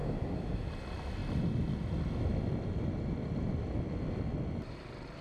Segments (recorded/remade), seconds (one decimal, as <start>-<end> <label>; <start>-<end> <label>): 0.0-0.7 remade; 0.7-5.2 recorded